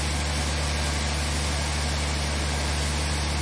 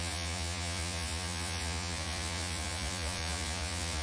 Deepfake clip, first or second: second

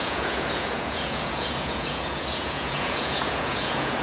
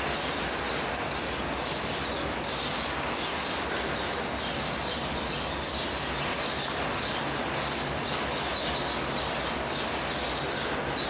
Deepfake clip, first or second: first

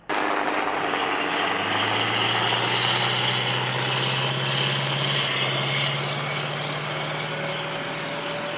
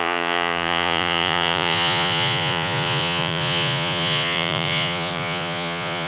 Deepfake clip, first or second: second